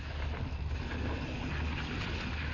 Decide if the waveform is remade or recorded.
recorded